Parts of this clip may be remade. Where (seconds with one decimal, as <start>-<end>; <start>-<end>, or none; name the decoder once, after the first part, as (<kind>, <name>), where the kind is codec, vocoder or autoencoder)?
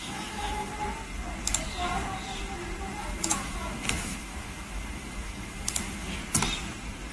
0.0-0.7 (autoencoder, DAC-VAE); 3.0-6.2